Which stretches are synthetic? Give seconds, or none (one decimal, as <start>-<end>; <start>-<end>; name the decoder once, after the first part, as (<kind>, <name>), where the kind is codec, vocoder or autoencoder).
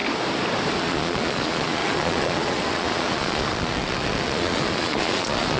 0.8-5.6 (vocoder, Vocos)